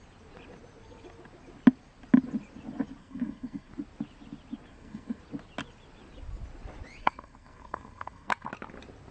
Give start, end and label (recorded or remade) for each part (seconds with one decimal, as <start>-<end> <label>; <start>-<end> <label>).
0.0-3.0 recorded; 3.0-3.7 remade; 3.7-4.7 recorded; 4.7-5.2 remade; 5.2-7.0 recorded; 7.0-8.5 remade; 8.5-9.1 recorded

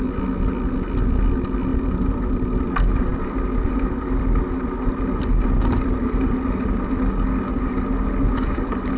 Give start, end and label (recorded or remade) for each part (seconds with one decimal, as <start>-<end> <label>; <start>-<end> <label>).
0.0-9.0 recorded